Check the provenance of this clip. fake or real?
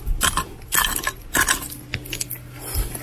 real